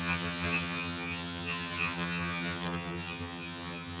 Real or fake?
fake